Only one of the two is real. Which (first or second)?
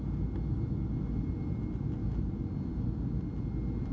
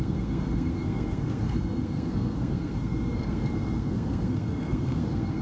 first